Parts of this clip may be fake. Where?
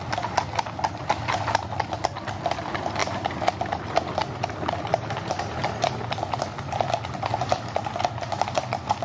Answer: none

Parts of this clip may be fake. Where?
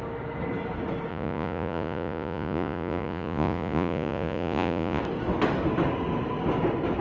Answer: 1.1-5.0 (vocoder, Vocos)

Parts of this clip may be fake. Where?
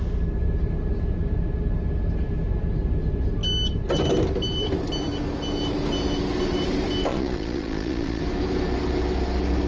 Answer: 7.1-8.2 (vocoder, Vocos)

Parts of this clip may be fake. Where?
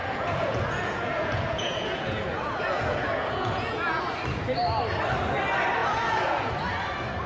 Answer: 0.0-4.0 (vocoder, Vocos); 5.8-6.5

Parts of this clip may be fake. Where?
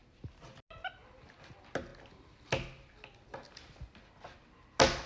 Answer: none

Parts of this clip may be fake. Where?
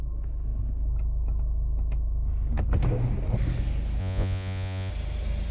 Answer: 4.0-4.9 (vocoder, Vocos)